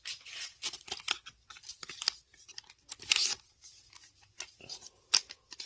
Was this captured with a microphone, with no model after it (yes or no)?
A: yes